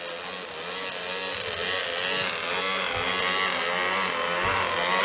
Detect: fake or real real